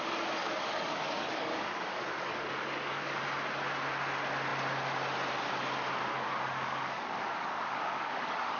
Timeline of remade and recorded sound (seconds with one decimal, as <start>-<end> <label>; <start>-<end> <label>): 0.0-0.4 recorded; 0.4-3.2 remade; 3.2-6.1 recorded; 6.1-8.6 remade